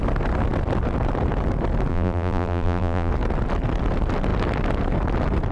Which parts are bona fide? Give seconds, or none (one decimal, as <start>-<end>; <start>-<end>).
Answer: 0.0-1.9; 3.1-5.5